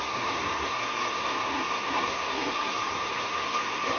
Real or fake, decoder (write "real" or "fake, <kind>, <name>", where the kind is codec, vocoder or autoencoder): fake, codec, SNAC